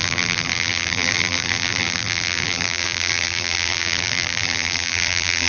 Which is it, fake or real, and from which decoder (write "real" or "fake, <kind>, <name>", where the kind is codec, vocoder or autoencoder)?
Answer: fake, vocoder, BigVGAN v2